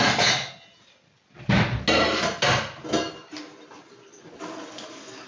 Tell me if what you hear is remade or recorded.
recorded